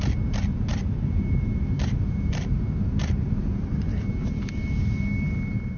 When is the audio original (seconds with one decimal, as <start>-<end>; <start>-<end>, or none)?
0.0-0.7; 2.6-3.5; 4.6-5.8